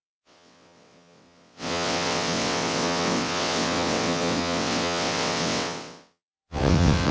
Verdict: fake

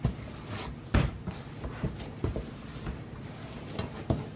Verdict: real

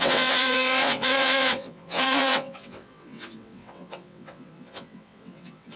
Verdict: fake